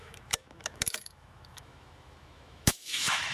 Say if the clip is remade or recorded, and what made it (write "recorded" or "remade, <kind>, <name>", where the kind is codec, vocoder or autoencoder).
remade, autoencoder, DAC-VAE